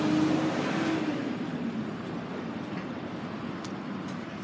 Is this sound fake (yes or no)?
no